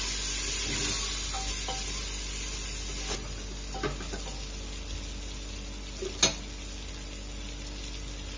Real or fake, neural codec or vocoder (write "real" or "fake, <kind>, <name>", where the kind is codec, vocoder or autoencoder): real